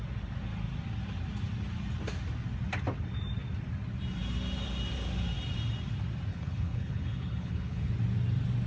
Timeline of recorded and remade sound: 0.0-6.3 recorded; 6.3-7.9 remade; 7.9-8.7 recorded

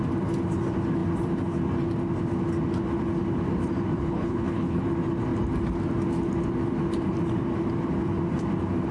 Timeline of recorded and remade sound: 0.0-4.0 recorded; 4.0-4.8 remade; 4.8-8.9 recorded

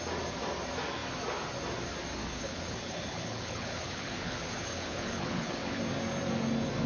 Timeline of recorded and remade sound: 0.0-2.2 recorded; 2.2-5.8 remade; 5.8-6.9 recorded

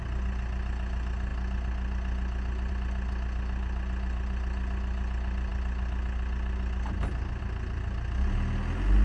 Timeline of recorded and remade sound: 0.0-9.0 recorded